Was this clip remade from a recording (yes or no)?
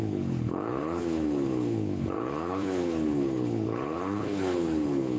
yes